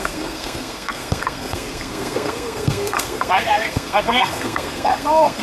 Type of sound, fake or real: fake